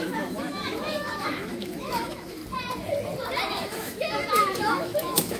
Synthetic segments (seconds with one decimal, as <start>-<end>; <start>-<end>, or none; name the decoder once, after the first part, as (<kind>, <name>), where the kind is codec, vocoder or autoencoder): 0.0-2.4 (autoencoder, DAC-VAE); 3.5-5.4